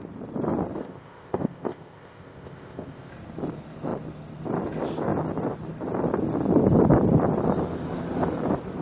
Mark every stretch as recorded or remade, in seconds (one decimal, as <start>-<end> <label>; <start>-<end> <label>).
0.0-0.8 recorded; 0.8-3.1 remade; 3.1-8.8 recorded